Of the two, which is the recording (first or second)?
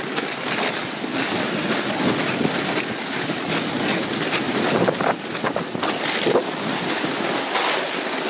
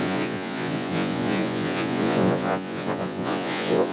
first